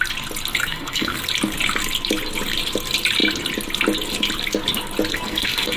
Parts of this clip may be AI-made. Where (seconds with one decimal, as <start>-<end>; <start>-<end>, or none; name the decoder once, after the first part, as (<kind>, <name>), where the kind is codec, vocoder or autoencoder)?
0.6-1.2 (codec, SNAC); 5.1-5.8